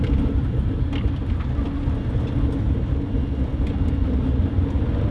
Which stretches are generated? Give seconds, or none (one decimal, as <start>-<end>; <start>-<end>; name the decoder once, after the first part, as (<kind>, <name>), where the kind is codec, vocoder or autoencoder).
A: none